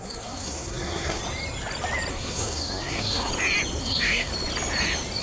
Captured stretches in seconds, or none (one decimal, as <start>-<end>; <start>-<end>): 1.2-2.1; 3.3-3.8; 4.3-5.2